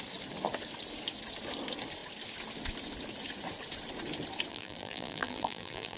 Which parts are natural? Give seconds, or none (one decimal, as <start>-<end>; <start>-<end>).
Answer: 0.0-4.5